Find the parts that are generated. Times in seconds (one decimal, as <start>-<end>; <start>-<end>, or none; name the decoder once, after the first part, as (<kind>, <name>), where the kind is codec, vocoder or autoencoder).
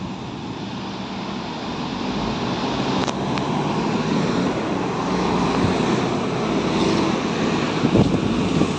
none